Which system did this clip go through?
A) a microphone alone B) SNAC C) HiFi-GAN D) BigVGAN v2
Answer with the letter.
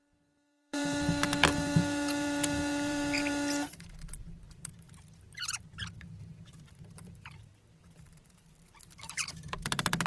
D